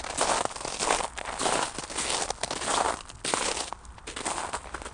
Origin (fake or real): real